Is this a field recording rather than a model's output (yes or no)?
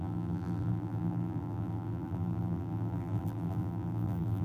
no